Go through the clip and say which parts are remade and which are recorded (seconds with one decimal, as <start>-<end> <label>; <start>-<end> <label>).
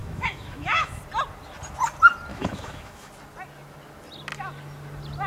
0.0-1.0 remade; 1.0-2.3 recorded; 2.3-3.1 remade; 3.1-5.3 recorded